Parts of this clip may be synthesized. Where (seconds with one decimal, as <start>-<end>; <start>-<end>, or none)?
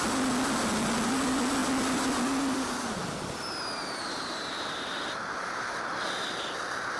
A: none